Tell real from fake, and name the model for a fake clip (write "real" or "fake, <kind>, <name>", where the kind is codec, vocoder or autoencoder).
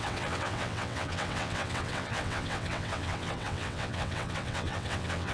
fake, vocoder, WaveNeXt